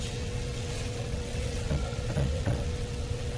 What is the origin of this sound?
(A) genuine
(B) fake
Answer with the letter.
B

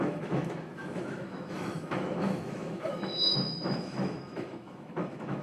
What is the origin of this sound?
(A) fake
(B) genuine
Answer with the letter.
A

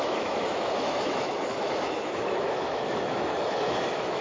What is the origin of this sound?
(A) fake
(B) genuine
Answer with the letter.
A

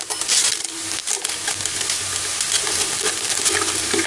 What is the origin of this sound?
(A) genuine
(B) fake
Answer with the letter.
A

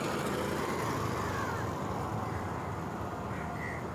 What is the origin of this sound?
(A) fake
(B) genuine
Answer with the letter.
B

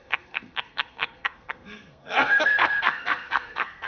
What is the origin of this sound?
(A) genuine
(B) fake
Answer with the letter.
B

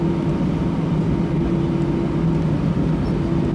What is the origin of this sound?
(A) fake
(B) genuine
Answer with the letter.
B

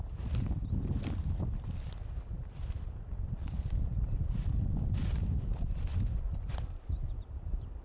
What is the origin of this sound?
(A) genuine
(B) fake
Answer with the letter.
B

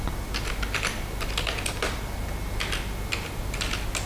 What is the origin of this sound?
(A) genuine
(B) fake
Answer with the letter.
A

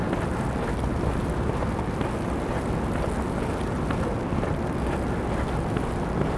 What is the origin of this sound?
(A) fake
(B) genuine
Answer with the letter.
B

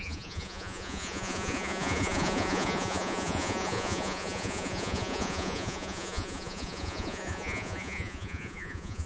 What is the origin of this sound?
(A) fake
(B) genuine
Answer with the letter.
A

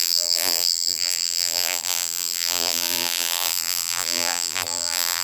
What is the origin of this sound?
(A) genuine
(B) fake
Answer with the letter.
B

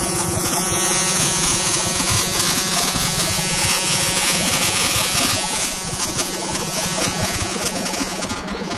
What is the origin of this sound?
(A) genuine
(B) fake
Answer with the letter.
B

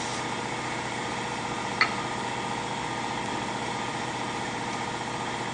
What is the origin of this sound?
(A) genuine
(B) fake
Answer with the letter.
A